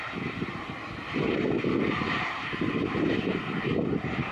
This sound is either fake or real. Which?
real